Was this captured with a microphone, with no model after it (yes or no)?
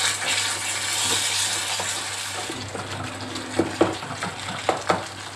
yes